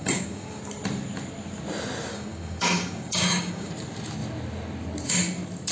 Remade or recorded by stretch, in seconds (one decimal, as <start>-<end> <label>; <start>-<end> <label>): 0.0-0.6 remade; 0.6-2.1 recorded; 2.1-3.7 remade; 3.7-5.7 recorded